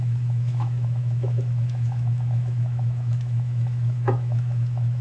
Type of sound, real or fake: fake